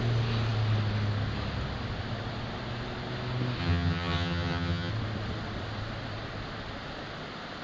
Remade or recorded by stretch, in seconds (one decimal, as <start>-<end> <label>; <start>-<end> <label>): 0.0-3.6 recorded; 3.6-4.9 remade; 4.9-7.6 recorded